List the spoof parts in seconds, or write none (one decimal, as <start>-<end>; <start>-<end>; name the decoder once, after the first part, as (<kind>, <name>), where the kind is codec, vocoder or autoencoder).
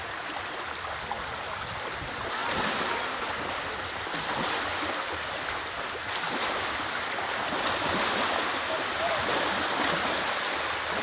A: none